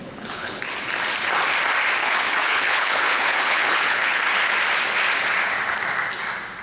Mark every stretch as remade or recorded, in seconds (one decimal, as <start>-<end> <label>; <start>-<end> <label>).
0.0-0.6 remade; 0.6-2.0 recorded; 2.0-4.2 remade; 4.2-6.6 recorded

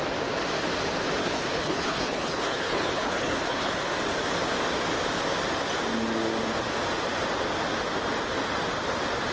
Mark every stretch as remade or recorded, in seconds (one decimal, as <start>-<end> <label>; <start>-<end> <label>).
0.0-1.2 recorded; 1.2-3.9 remade; 3.9-9.3 recorded

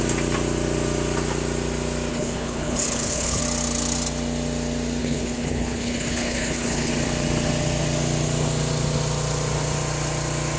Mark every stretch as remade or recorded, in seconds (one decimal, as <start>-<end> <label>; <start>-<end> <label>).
0.0-2.1 recorded; 2.1-3.4 remade; 3.4-5.0 recorded; 5.0-6.9 remade; 6.9-10.6 recorded

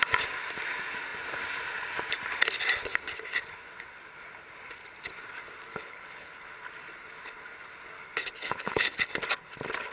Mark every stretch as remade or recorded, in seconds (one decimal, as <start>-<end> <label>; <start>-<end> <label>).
0.0-5.7 recorded; 5.7-6.3 remade; 6.3-8.4 recorded; 8.4-9.0 remade; 9.0-9.9 recorded

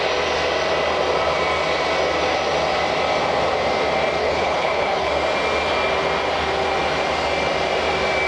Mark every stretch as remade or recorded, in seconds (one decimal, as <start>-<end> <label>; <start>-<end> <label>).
0.0-4.2 recorded; 4.2-5.1 remade; 5.1-8.3 recorded

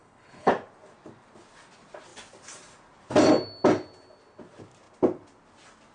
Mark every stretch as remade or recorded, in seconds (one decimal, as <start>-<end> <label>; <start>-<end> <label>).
0.0-0.5 remade; 0.5-5.9 recorded

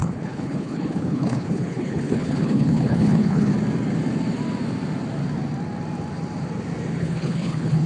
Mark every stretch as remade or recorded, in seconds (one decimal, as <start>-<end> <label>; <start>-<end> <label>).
0.0-3.5 remade; 3.5-7.0 recorded; 7.0-7.9 remade

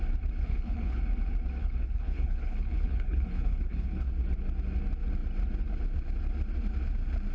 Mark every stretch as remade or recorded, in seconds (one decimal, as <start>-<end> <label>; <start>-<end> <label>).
0.0-0.4 recorded; 0.4-1.0 remade; 1.0-1.6 recorded; 1.6-4.1 remade; 4.1-7.3 recorded